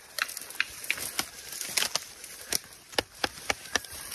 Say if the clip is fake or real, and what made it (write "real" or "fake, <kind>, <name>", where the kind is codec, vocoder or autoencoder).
real